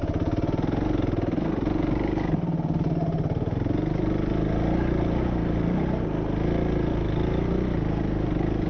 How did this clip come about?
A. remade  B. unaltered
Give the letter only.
B